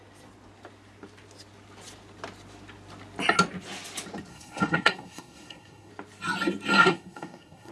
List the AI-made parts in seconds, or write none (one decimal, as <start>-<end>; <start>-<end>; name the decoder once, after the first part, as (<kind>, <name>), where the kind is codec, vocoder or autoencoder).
4.3-5.9 (codec, SNAC); 6.8-7.7